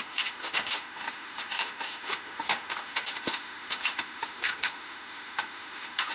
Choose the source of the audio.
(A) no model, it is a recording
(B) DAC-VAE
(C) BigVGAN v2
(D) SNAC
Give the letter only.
B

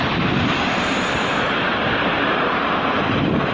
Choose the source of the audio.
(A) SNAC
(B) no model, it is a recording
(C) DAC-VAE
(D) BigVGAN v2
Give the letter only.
D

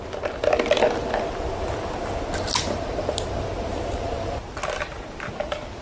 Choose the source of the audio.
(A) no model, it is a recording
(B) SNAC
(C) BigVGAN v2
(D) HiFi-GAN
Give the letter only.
A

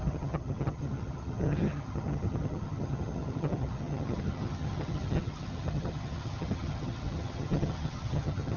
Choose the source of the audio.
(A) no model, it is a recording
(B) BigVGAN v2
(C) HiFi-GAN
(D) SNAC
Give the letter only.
C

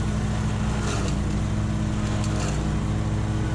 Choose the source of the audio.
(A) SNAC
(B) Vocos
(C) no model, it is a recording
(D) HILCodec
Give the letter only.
C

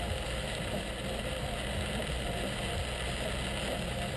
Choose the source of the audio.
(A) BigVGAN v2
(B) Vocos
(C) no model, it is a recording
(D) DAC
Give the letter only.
C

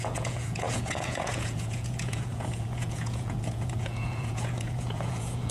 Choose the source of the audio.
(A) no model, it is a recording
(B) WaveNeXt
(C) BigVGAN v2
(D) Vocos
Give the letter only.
D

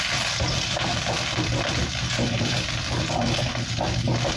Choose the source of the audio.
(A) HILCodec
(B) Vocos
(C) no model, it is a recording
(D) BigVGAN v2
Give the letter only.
C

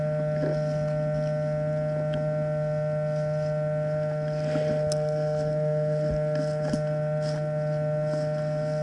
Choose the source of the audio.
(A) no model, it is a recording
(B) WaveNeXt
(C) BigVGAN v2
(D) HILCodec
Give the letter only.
A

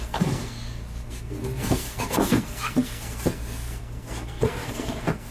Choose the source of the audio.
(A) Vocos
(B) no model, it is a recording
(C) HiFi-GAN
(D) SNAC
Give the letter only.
D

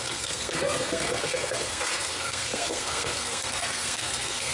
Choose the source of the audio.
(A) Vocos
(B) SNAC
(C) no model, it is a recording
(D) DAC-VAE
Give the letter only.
B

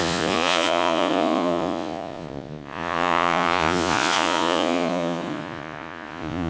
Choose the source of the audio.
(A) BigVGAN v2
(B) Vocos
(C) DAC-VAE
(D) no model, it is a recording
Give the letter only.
B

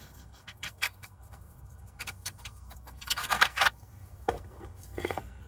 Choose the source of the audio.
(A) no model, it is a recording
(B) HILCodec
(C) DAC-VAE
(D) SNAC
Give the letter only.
D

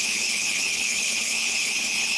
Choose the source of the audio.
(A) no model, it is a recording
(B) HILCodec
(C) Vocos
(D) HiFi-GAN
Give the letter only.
B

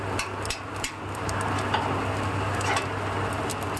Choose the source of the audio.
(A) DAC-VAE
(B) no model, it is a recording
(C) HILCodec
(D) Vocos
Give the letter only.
B